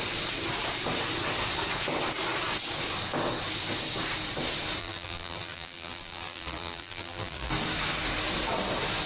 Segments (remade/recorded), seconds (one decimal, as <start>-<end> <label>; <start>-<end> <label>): 0.0-4.8 recorded; 4.8-7.5 remade; 7.5-9.1 recorded